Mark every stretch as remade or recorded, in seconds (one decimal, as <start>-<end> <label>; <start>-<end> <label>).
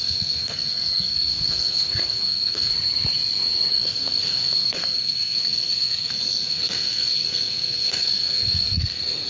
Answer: 0.0-2.7 remade; 2.7-3.7 recorded; 3.7-9.3 remade